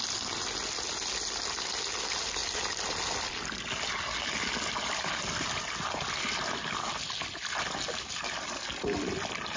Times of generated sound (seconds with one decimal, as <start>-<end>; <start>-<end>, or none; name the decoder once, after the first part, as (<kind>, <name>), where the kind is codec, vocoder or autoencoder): none

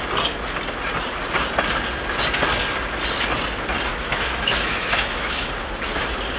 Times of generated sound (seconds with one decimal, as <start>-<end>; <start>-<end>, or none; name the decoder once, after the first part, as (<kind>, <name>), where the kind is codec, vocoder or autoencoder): 3.9-5.5 (autoencoder, DAC-VAE)

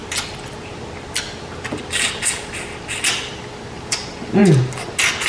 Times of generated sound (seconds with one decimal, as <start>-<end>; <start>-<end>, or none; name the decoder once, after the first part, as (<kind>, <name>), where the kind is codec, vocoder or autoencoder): none

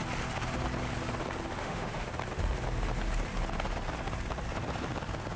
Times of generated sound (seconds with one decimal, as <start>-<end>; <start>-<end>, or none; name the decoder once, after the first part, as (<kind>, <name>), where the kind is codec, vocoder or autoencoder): 1.6-2.1 (autoencoder, DAC-VAE)

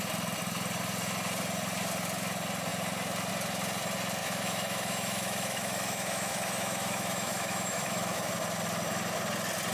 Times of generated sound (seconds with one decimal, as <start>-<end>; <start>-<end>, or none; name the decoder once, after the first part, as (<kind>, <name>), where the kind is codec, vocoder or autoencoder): 4.2-8.3 (autoencoder, DAC-VAE)

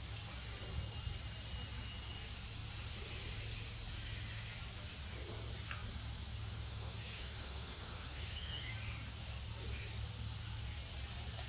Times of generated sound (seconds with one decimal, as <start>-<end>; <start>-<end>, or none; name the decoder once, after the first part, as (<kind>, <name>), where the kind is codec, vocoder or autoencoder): 6.5-8.7 (autoencoder, DAC-VAE)

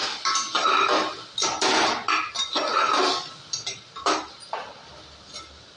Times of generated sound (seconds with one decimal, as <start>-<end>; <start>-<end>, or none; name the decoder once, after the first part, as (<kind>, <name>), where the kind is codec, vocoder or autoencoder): none